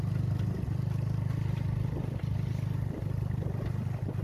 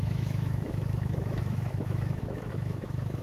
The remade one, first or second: second